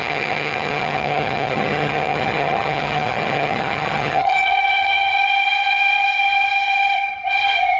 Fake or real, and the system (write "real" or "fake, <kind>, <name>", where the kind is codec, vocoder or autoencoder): fake, vocoder, HiFi-GAN